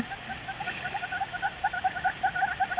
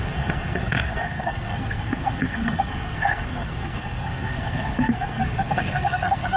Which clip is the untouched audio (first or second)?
first